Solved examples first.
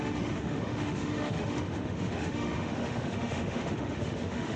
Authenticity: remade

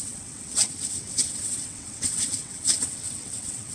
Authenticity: remade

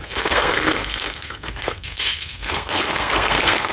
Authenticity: remade